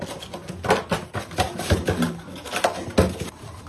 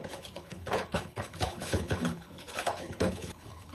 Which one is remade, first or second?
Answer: second